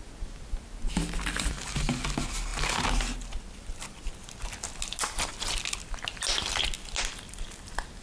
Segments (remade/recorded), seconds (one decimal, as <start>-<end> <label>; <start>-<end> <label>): 0.0-8.0 recorded